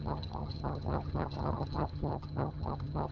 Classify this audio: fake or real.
fake